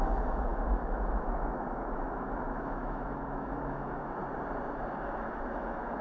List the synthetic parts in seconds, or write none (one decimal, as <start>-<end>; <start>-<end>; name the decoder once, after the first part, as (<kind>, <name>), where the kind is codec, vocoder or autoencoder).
0.0-4.2 (autoencoder, DAC-VAE); 4.9-6.0